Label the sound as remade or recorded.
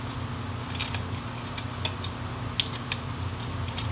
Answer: recorded